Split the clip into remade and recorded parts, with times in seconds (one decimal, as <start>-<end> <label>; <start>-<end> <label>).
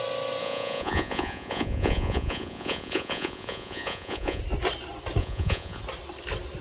0.0-0.4 recorded; 0.4-4.4 remade; 4.4-5.2 recorded; 5.2-5.8 remade; 5.8-6.6 recorded